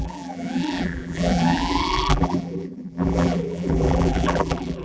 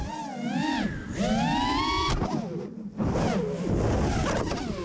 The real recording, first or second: second